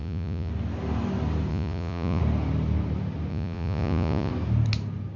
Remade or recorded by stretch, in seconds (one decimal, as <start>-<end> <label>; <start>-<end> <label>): 0.0-0.5 remade; 0.5-1.5 recorded; 1.5-2.2 remade; 2.2-3.3 recorded; 3.3-4.3 remade; 4.3-5.2 recorded